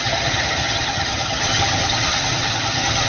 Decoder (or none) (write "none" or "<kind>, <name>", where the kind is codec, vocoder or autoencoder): vocoder, HiFi-GAN